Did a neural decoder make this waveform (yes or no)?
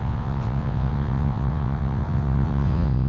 yes